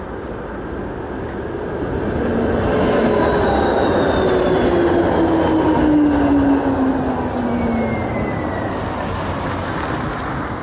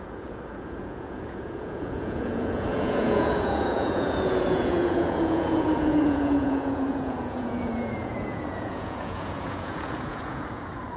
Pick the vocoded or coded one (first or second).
second